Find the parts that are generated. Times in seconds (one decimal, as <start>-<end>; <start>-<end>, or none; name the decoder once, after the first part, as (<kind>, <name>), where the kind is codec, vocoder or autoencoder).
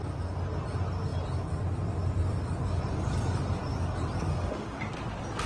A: 4.3-4.8 (autoencoder, DAC-VAE)